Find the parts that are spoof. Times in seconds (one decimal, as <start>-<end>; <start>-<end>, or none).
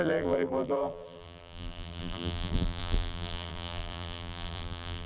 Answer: 0.0-5.1